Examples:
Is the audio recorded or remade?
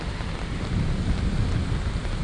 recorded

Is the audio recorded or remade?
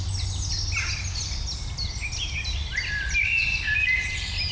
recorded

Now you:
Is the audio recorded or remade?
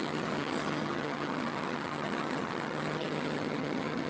remade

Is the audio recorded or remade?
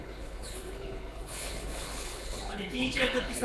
remade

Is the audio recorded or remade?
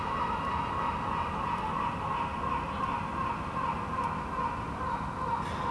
recorded